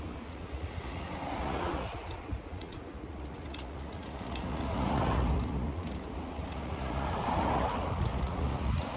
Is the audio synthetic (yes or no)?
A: yes